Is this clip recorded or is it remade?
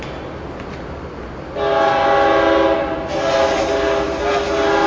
recorded